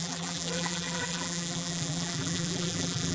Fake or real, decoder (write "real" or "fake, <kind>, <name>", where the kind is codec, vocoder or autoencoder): fake, vocoder, BigVGAN v2